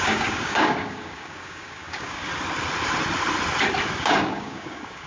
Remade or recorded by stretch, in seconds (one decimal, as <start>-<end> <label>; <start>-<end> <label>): 0.0-2.3 remade; 2.3-3.9 recorded; 3.9-5.1 remade